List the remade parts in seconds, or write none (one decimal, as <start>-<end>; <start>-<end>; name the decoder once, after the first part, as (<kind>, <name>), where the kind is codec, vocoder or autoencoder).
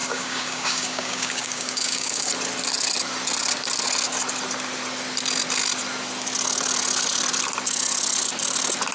0.0-2.3 (codec, DAC)